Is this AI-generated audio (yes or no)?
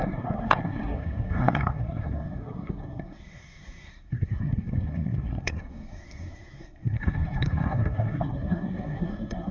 yes